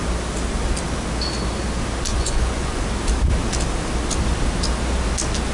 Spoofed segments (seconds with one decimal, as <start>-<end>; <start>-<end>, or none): 2.1-2.8